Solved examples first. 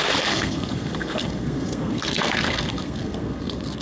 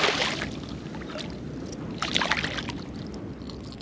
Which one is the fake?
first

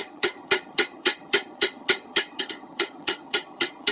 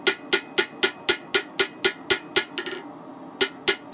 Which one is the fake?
first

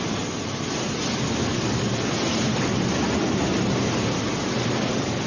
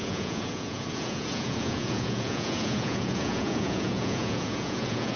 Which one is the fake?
second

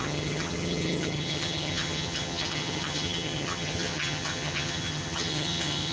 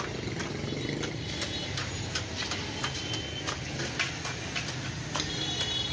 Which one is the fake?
first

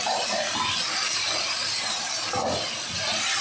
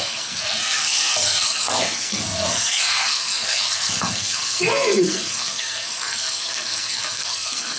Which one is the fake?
second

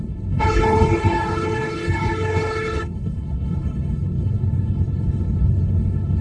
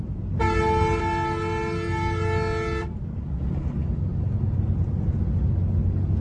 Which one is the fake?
first